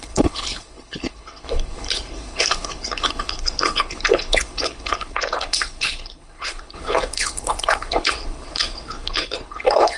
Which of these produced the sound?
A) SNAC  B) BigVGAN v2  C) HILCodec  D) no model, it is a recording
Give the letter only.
C